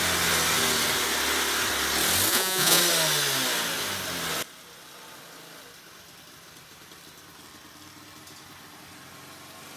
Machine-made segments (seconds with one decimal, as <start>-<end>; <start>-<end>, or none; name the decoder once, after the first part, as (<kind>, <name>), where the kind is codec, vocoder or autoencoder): 2.3-2.8 (vocoder, Vocos)